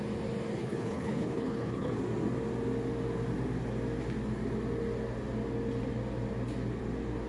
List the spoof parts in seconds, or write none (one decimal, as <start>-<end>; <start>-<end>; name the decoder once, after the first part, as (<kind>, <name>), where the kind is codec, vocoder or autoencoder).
0.6-2.0 (codec, HILCodec)

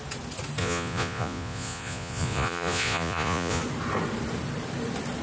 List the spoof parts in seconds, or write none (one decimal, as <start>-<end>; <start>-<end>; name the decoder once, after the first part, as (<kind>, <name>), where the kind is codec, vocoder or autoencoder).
0.6-3.6 (vocoder, Vocos)

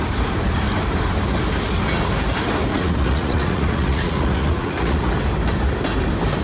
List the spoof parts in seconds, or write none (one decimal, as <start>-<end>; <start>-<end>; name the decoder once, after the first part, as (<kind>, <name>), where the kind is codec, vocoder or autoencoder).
2.7-5.1 (vocoder, Vocos)

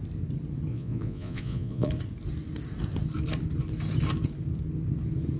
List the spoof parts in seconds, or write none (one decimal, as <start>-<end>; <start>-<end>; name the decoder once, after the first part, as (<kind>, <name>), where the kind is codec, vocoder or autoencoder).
0.7-1.9 (vocoder, Vocos)

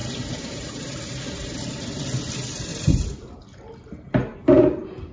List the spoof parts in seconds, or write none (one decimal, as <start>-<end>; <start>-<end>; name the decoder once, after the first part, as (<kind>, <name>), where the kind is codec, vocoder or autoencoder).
0.0-2.0 (vocoder, BigVGAN v2); 2.7-3.4; 4.3-5.1

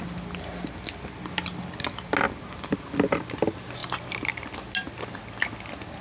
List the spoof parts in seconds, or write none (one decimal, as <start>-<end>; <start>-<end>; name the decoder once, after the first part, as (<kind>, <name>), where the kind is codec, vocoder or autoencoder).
none

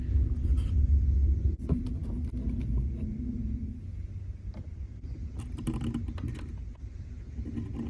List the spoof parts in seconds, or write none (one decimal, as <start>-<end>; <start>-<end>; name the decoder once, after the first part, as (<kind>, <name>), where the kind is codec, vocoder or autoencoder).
1.2-1.9 (vocoder, BigVGAN v2); 3.9-4.8

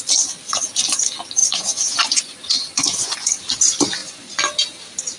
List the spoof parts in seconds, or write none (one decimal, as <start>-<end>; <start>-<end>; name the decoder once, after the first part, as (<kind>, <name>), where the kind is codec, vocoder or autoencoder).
1.4-3.4 (vocoder, Vocos); 4.0-4.5